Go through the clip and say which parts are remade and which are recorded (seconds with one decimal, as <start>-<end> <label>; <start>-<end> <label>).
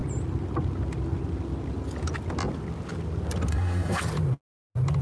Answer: 0.0-3.5 recorded; 3.5-4.0 remade; 4.0-5.0 recorded